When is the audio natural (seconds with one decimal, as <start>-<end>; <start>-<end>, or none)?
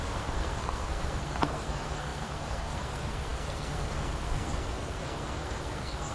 none